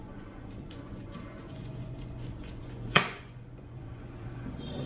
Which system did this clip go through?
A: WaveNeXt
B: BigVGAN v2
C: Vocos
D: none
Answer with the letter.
C